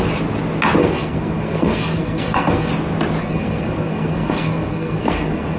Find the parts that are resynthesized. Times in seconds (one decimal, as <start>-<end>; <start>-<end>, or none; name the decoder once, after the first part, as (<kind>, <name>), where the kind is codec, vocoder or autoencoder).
0.8-2.7 (codec, SNAC); 3.2-5.6